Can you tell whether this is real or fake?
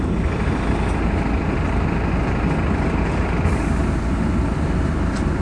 real